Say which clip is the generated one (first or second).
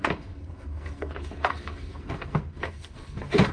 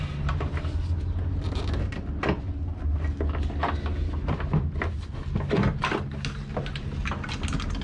first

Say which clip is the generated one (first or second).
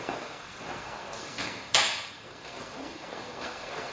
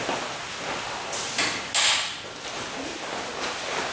first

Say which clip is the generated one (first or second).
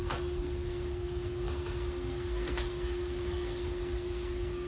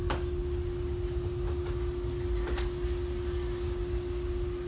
first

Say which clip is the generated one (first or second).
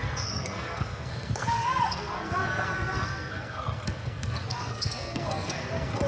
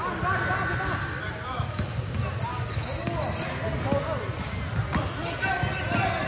first